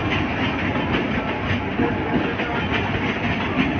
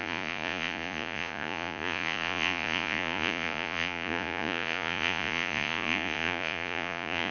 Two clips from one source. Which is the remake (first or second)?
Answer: second